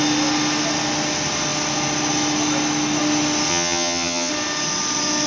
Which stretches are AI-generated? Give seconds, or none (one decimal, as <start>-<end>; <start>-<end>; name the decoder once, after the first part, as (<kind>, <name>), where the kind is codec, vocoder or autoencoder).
3.5-4.3 (vocoder, HiFi-GAN)